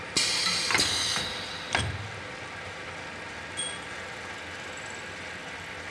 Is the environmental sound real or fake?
real